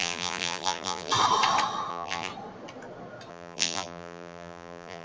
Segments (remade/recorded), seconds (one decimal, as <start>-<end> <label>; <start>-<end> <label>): 0.0-1.1 remade; 1.1-1.9 recorded; 1.9-2.3 remade; 2.3-3.3 recorded; 3.3-5.0 remade